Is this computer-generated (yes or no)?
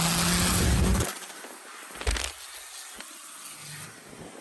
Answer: no